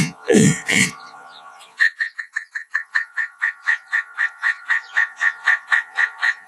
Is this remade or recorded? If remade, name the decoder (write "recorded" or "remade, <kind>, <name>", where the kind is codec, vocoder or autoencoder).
remade, vocoder, Vocos